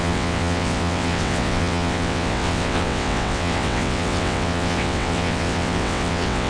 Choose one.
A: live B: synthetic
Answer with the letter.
B